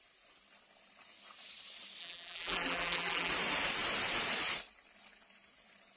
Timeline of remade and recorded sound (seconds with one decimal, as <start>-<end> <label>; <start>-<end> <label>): 0.0-2.0 recorded; 2.0-3.3 remade; 3.3-6.0 recorded